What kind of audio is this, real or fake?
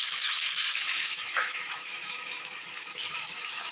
fake